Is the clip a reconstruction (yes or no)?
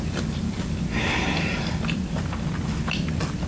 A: yes